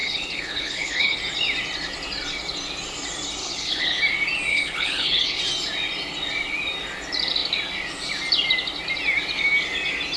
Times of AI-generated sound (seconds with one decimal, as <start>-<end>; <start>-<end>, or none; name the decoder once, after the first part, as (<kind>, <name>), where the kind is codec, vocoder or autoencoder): 0.0-1.2 (codec, HILCodec); 3.4-4.0; 4.5-5.4

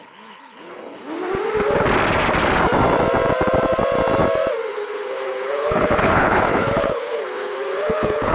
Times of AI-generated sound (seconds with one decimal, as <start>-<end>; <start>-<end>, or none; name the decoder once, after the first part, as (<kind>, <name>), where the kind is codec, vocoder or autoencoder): 0.0-1.1 (codec, HILCodec); 4.7-8.3

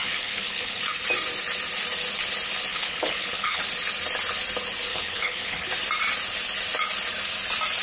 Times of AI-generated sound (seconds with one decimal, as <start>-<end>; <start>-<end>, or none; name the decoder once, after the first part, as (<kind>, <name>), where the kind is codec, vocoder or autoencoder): 0.0-0.8 (codec, HILCodec); 2.7-3.6; 4.9-5.7

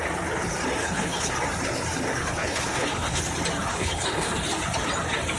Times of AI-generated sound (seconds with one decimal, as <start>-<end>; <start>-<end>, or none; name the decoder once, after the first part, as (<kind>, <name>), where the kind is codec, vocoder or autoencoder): 0.8-1.3 (codec, HILCodec); 2.2-3.2; 3.7-4.3

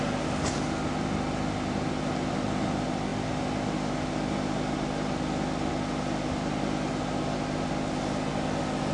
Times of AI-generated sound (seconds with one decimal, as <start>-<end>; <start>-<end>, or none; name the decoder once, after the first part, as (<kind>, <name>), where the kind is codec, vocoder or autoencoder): none

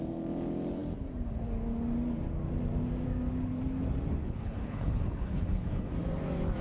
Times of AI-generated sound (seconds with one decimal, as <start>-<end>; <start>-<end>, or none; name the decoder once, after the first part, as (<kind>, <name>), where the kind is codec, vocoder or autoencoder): 4.2-5.9 (codec, HILCodec)

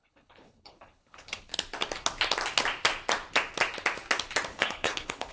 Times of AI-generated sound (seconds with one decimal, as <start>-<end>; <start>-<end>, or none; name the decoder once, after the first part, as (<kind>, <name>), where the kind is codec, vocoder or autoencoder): 0.0-1.5 (codec, HILCodec); 4.6-5.3